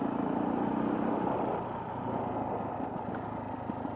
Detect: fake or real real